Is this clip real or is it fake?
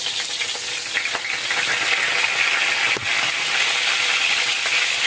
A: real